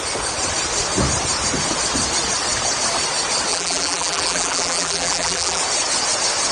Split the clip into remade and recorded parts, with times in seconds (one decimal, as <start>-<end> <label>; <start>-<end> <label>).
0.0-3.5 recorded; 3.5-5.6 remade; 5.6-6.5 recorded